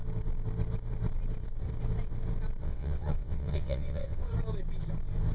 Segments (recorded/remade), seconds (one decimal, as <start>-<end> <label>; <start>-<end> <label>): 0.0-2.6 recorded; 2.6-4.3 remade; 4.3-5.3 recorded